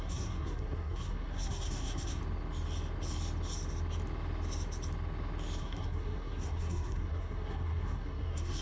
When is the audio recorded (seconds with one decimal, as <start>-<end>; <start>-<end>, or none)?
2.2-5.6